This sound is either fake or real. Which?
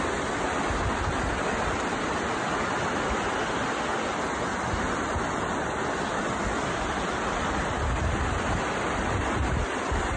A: real